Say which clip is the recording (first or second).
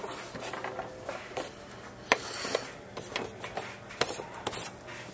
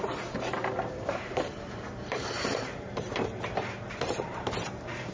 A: first